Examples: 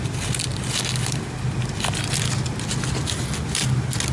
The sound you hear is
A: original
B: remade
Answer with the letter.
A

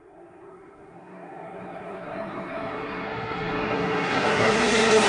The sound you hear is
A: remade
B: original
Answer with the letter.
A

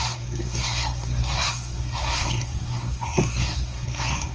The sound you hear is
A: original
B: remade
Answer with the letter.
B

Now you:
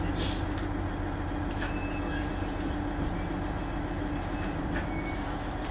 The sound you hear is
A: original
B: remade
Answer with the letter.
A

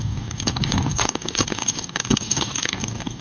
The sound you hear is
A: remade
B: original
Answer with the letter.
A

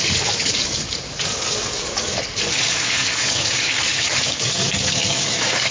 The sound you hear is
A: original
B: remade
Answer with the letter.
B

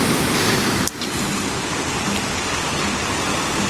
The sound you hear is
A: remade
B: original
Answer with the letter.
B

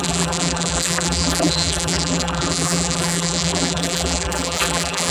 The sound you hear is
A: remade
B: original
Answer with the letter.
A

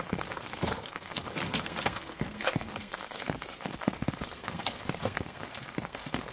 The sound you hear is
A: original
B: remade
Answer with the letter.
B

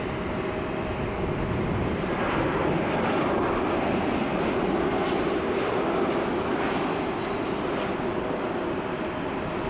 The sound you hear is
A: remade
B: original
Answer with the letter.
B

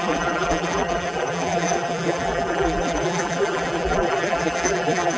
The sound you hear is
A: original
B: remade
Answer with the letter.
B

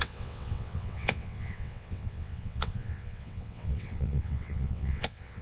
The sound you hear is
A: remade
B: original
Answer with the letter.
A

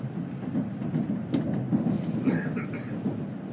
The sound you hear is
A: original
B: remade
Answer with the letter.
A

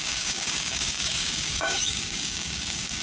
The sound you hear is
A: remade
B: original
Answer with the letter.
A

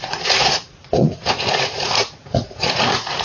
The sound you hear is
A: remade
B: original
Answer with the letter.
A